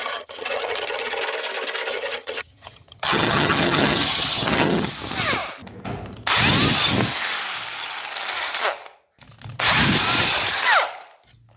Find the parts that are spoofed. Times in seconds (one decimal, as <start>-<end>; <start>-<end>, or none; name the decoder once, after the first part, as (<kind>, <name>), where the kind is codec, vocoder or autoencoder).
0.0-1.2 (vocoder, HiFi-GAN); 1.9-4.9